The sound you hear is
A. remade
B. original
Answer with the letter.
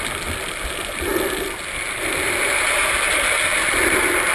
B